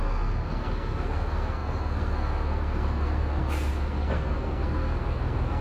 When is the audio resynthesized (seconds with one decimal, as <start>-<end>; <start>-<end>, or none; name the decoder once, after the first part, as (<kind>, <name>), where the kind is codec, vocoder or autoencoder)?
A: 0.0-5.6 (codec, SNAC)